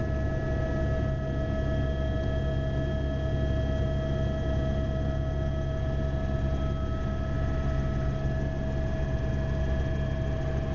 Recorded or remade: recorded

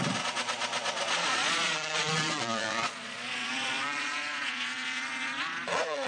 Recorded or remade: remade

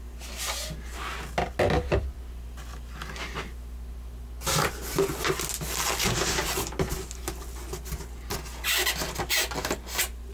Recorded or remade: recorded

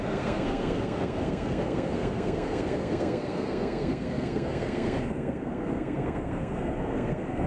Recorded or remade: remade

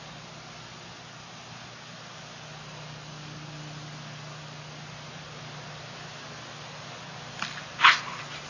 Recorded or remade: recorded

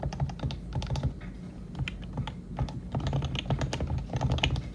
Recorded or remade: recorded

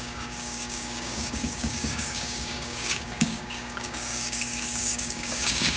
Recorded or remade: remade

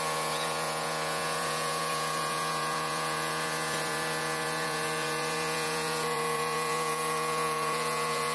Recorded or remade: remade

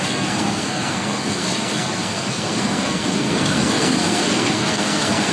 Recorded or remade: remade